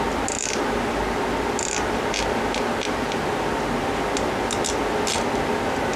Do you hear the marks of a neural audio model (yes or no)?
no